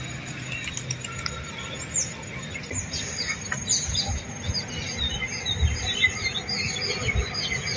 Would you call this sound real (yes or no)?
yes